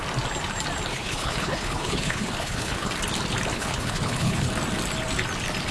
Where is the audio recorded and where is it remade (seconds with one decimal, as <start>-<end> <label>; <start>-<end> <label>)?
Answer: 0.0-0.9 recorded; 0.9-2.9 remade; 2.9-3.5 recorded; 3.5-4.5 remade; 4.5-5.7 recorded